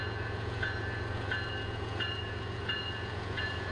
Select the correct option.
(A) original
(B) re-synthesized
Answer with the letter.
B